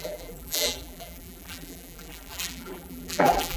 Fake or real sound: fake